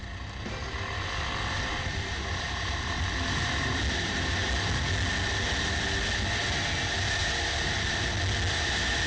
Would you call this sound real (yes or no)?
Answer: yes